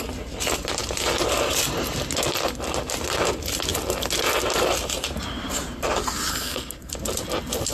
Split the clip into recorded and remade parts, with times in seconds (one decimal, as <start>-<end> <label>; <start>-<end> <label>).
0.0-6.3 recorded; 6.3-6.9 remade; 6.9-7.7 recorded